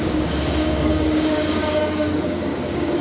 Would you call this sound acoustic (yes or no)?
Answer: no